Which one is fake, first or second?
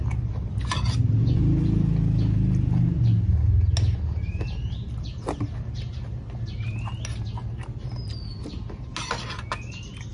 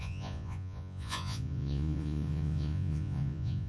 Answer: second